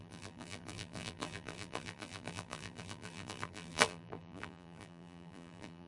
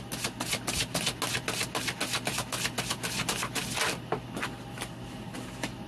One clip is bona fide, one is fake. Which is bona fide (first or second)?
second